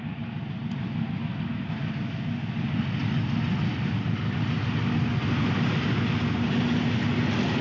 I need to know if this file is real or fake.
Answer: real